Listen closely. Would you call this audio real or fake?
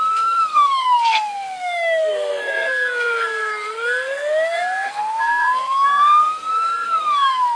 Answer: fake